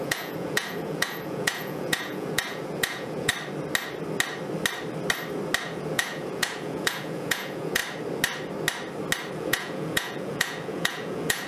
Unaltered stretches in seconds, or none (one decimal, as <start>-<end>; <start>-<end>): 3.3-5.6; 7.8-9.3

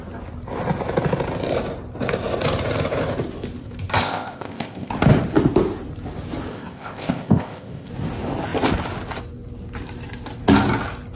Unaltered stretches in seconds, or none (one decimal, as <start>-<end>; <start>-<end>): 0.0-4.0; 4.9-6.5; 7.9-11.2

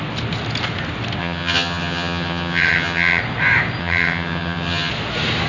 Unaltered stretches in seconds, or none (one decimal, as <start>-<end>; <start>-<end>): 0.0-1.2; 3.2-3.8; 4.9-5.5

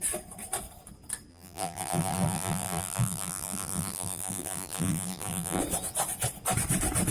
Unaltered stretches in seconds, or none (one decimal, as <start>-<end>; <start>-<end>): 0.0-1.3; 5.6-7.1

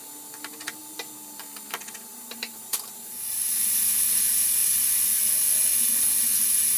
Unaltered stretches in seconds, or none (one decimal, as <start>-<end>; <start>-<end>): 0.0-2.1; 3.6-6.8